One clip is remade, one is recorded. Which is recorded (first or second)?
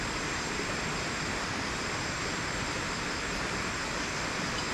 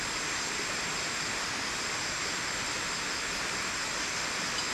second